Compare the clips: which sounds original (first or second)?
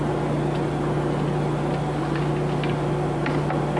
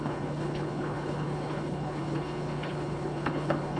first